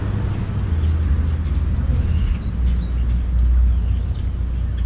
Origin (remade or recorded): recorded